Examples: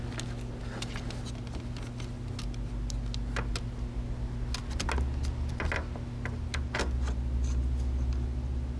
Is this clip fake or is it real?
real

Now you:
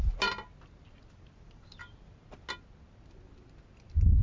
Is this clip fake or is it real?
real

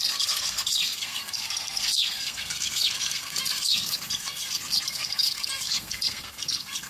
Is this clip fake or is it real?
fake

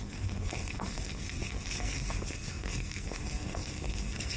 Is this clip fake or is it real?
fake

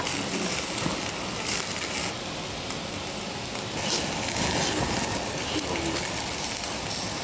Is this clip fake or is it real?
real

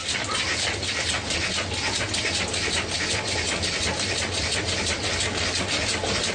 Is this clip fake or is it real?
real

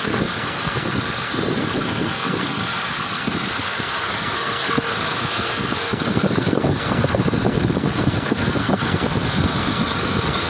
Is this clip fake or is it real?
fake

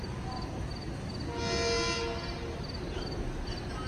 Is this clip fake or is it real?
real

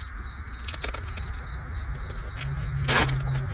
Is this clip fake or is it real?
real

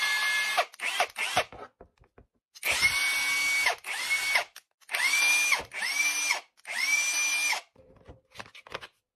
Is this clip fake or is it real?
real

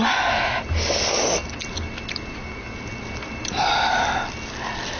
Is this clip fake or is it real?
real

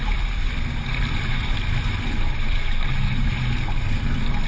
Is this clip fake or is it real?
real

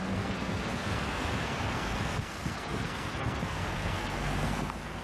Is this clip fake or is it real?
fake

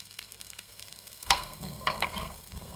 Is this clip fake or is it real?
fake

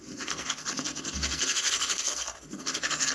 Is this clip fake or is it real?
fake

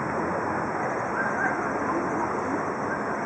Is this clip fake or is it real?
real